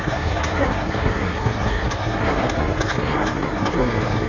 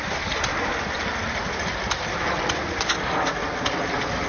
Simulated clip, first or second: first